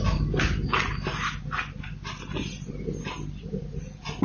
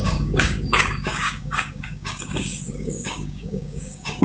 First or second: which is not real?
second